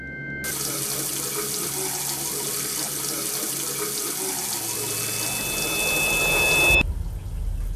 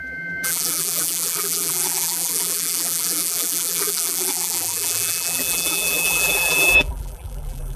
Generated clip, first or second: second